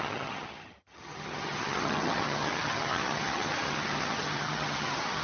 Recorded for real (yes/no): no